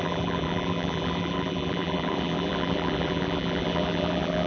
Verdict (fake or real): fake